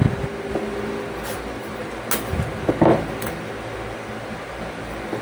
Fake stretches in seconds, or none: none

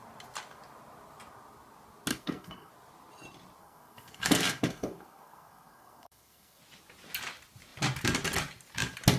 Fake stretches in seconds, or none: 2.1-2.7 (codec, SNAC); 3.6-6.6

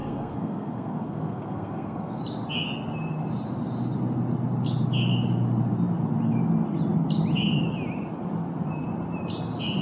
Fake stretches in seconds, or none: 0.0-2.2 (codec, SNAC)

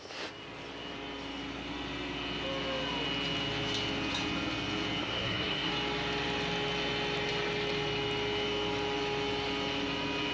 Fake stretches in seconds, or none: 5.0-5.7 (codec, SNAC)

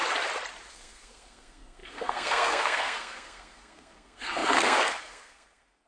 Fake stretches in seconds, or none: 0.7-5.9 (codec, SNAC)